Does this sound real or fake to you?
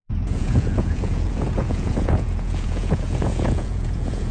fake